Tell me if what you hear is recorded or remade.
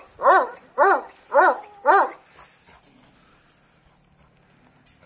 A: recorded